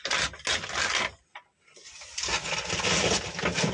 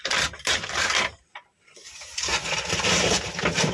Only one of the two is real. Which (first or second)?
first